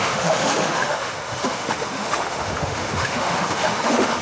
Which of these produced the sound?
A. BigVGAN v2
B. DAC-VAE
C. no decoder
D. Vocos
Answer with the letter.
B